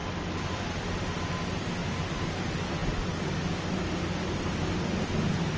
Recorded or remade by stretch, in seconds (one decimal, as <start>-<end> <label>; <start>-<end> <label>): 0.0-1.8 recorded; 1.8-2.4 remade; 2.4-5.6 recorded